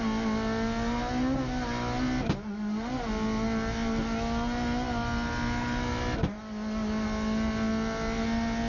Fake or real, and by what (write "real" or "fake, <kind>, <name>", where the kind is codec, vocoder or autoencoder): real